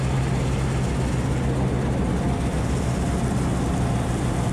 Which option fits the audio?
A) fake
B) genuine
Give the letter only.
B